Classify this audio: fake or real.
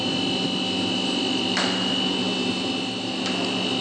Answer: fake